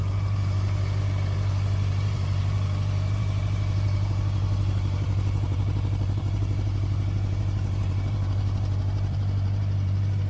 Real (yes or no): no